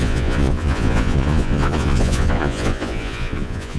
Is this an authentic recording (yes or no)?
no